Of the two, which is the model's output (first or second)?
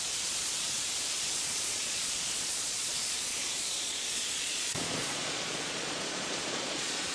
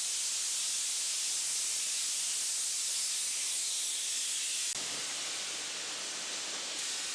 first